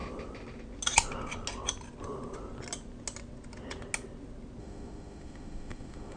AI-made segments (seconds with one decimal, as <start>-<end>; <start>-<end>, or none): 4.6-6.2